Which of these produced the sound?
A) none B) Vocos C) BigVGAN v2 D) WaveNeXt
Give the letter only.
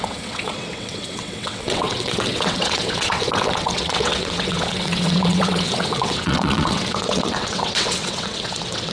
D